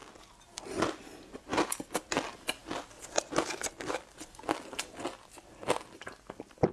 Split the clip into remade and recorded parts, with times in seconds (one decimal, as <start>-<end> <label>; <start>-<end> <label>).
0.0-6.7 recorded